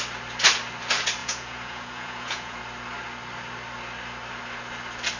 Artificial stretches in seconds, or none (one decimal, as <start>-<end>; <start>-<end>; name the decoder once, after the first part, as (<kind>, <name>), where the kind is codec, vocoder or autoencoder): 1.2-2.6 (vocoder, Vocos)

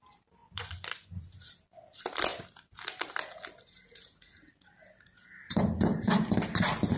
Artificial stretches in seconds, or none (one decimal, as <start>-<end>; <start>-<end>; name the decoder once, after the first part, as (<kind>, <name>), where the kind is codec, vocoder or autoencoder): 0.4-1.2 (vocoder, Vocos)

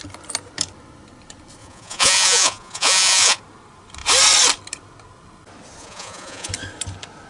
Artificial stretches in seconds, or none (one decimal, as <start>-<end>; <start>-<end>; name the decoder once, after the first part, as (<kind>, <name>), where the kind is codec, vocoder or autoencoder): 1.6-3.4 (vocoder, Vocos); 5.8-6.5

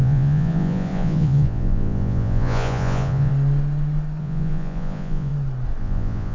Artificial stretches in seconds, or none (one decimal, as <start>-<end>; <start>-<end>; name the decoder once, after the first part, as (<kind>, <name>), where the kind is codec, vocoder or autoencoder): 0.0-3.3 (vocoder, Vocos); 4.2-5.3; 5.8-6.3

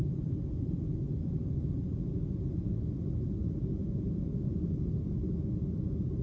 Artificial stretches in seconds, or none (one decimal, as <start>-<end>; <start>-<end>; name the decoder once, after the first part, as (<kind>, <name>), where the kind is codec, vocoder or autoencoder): 3.8-4.4 (vocoder, Vocos)

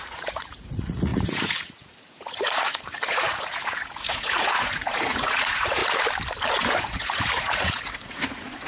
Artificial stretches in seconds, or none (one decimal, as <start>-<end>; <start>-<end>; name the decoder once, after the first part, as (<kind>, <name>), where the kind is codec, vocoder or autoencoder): 0.0-5.8 (vocoder, Vocos); 6.5-8.7